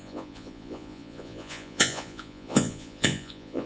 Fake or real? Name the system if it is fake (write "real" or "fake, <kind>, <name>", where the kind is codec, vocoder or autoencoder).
fake, vocoder, Vocos